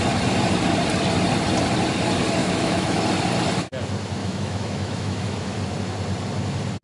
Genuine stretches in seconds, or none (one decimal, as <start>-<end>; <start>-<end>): 0.0-2.4; 3.0-4.2; 5.6-6.8